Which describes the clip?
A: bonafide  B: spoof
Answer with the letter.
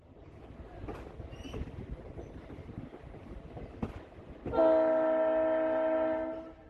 A